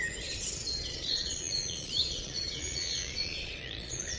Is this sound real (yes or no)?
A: no